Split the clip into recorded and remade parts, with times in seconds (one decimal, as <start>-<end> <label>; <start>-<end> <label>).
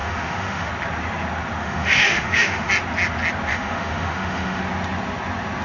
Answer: 0.0-0.7 remade; 0.7-1.6 recorded; 1.6-2.7 remade; 2.7-3.5 recorded; 3.5-4.6 remade; 4.6-5.6 recorded